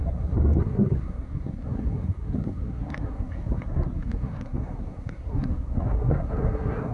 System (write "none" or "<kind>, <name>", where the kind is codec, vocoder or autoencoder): codec, SNAC